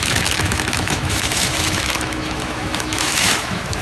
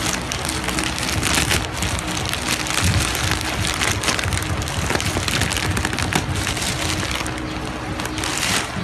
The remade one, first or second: first